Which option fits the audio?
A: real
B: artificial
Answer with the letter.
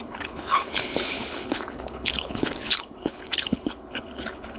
B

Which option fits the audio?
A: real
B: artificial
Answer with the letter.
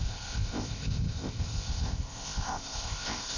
B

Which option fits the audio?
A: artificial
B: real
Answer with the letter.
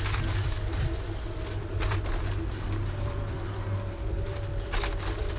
B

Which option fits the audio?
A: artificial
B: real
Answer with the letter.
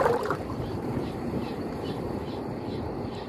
A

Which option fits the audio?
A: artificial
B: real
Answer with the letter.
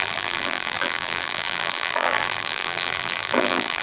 A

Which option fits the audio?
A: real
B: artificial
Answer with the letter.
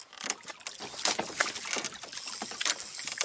A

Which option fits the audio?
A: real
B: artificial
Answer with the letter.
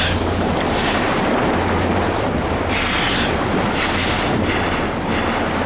A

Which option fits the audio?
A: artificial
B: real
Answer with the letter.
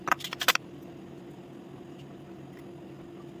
B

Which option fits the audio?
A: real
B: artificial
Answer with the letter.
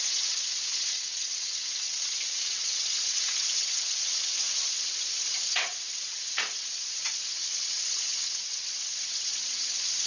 B